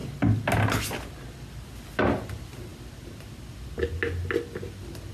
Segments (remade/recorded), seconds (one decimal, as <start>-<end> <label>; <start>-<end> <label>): 0.0-5.1 recorded